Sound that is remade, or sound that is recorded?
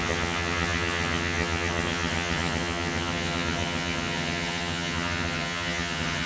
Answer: remade